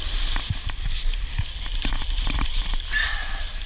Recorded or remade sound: recorded